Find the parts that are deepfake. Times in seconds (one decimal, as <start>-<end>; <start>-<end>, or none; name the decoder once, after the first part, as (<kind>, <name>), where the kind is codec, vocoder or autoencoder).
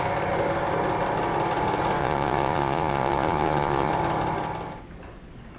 2.0-3.9 (vocoder, Vocos)